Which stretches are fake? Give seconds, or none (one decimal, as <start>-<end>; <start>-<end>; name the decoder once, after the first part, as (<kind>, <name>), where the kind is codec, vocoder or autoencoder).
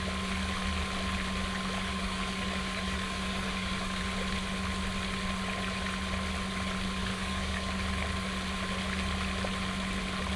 1.9-4.0 (codec, DAC); 7.0-7.8